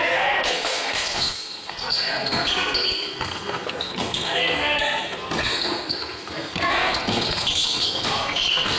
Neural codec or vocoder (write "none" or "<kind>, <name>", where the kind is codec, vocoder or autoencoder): codec, SNAC